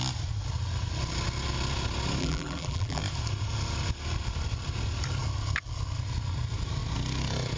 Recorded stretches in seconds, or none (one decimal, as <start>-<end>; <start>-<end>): 0.0-2.2; 3.0-7.6